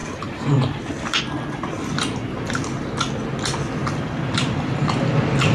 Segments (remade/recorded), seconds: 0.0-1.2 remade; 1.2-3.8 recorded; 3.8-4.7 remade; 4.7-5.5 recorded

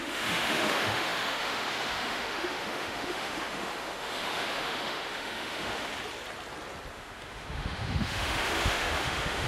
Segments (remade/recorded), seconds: 0.0-5.9 remade; 5.9-6.9 recorded; 6.9-9.5 remade

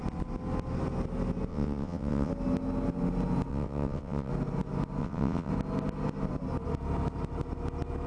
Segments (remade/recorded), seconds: 0.0-1.5 recorded; 1.5-2.3 remade; 2.3-3.5 recorded; 3.5-4.3 remade; 4.3-5.0 recorded; 5.0-5.5 remade; 5.5-8.1 recorded